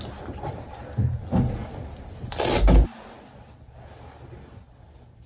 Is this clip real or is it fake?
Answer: real